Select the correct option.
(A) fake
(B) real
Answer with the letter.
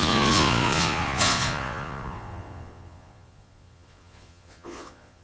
A